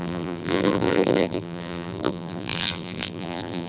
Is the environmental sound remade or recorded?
remade